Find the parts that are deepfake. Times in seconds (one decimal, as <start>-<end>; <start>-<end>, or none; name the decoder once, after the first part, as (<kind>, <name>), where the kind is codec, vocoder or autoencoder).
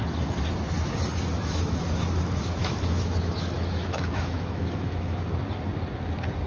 1.3-5.2 (autoencoder, DAC-VAE)